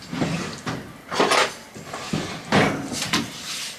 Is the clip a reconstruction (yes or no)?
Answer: no